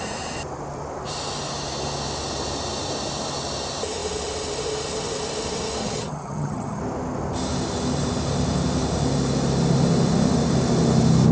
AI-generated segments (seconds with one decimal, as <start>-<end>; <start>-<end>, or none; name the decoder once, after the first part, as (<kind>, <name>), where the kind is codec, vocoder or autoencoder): 5.8-6.8 (vocoder, HiFi-GAN)